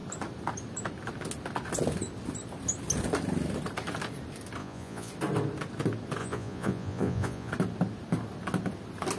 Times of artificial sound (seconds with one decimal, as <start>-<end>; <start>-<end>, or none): 4.6-5.1; 6.2-7.5